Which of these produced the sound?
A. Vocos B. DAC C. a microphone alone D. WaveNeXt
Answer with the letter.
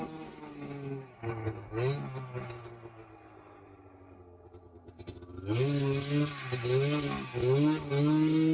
C